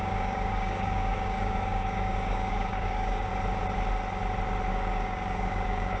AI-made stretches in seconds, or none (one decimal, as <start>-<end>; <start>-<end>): 0.0-3.3; 4.7-6.0